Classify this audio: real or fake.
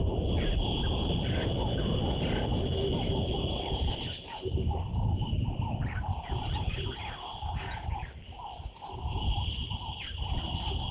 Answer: fake